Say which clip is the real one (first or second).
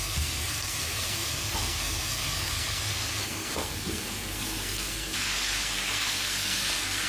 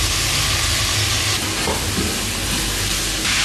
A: second